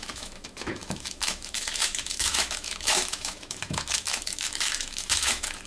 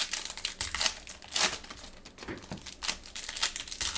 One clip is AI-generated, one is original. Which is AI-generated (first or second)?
first